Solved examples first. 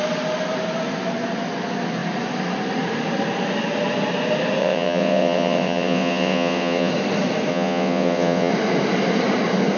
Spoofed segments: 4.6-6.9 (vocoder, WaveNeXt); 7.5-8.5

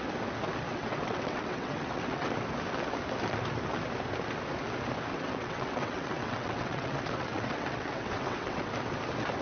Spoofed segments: 0.7-2.3 (vocoder, WaveNeXt); 5.1-8.7

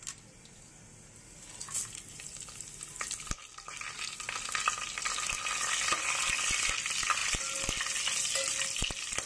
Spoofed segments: none

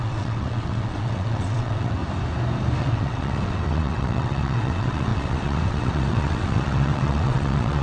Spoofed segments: 0.0-2.0 (vocoder, WaveNeXt); 2.8-7.8

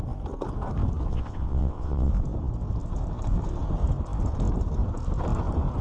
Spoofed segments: 1.1-2.1 (vocoder, WaveNeXt)